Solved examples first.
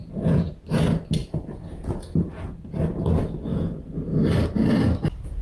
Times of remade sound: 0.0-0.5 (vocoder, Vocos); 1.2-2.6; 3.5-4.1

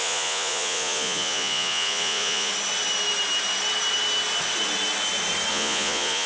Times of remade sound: 0.0-2.5 (vocoder, Vocos); 5.5-6.3